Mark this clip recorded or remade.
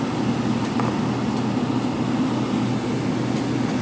recorded